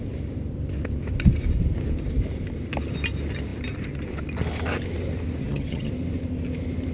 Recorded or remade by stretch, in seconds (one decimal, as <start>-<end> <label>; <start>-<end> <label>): 0.0-5.4 recorded; 5.4-5.9 remade; 5.9-6.9 recorded